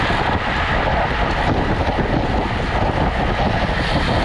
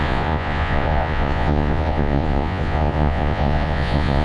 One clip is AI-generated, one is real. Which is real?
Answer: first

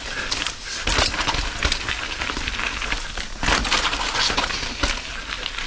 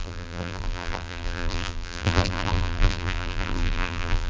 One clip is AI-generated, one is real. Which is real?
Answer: first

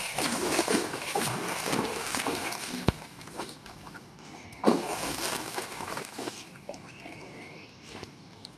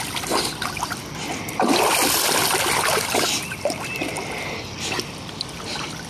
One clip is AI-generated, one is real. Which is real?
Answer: second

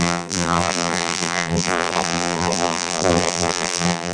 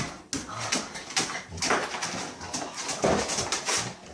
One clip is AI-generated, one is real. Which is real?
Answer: second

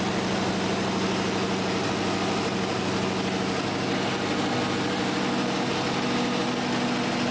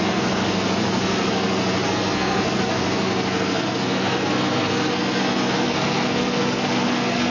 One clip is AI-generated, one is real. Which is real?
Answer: first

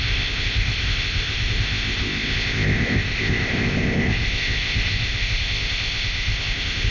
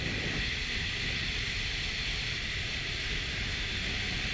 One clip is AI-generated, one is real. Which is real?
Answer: second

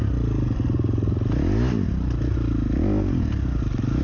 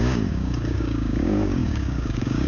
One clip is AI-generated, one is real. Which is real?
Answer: first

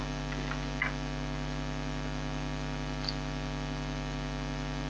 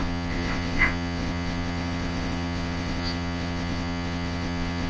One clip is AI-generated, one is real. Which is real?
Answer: first